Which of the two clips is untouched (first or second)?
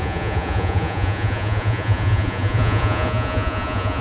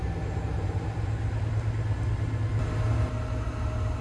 second